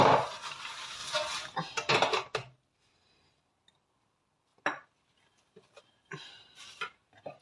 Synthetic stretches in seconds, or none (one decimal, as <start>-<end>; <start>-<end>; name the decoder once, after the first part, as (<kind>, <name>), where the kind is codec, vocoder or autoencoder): none